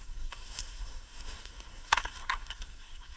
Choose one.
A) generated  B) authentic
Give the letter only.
A